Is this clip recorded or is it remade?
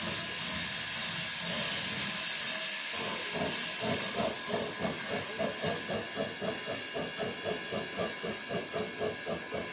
recorded